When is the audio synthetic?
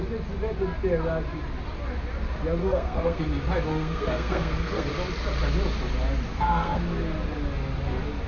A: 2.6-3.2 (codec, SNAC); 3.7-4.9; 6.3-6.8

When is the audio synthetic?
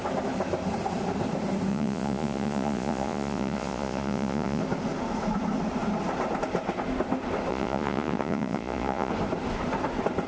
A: 1.7-4.6 (vocoder, Vocos); 7.5-9.1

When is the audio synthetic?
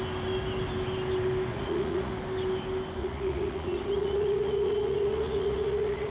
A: 1.5-2.1 (vocoder, Vocos); 3.0-6.1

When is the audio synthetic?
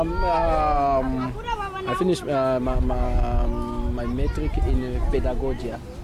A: none